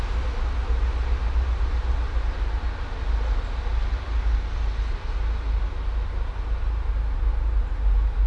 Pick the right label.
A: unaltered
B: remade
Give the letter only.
A